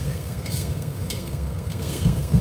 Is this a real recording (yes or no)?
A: no